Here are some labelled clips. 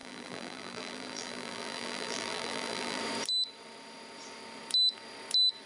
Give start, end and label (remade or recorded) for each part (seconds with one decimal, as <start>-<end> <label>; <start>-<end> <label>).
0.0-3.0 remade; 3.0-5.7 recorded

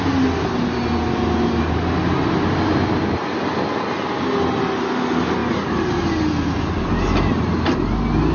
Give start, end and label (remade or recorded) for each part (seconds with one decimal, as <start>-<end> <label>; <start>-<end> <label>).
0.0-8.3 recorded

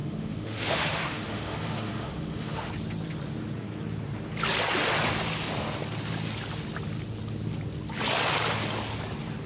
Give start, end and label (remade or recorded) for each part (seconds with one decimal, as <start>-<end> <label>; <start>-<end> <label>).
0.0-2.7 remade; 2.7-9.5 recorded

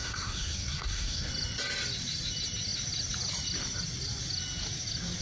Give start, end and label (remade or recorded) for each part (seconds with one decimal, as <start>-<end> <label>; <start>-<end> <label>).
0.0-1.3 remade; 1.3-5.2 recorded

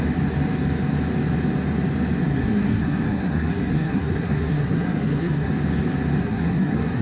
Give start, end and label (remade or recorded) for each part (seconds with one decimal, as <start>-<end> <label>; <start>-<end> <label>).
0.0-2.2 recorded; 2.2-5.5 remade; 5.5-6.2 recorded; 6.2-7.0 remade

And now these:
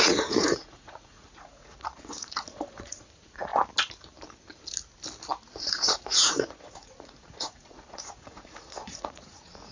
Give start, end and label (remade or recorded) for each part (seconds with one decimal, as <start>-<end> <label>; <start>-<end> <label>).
0.0-3.5 remade; 3.5-5.6 recorded; 5.6-9.7 remade

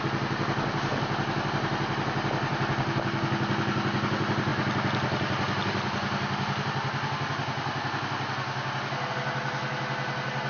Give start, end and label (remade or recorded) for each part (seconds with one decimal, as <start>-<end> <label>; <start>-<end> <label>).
0.0-10.5 recorded

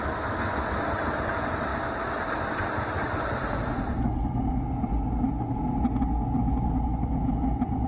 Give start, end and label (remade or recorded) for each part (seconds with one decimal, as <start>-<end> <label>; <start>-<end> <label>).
0.0-7.9 recorded